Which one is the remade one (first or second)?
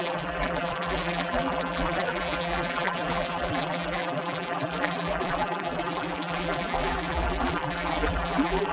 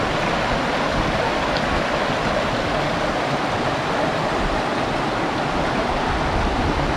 first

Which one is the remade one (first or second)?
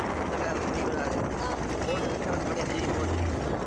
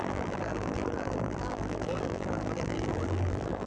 second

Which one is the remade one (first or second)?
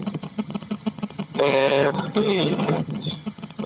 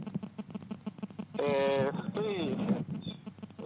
first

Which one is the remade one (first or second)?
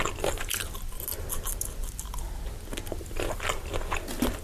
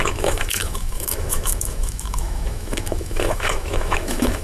second